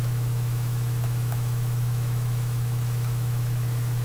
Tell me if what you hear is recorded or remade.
remade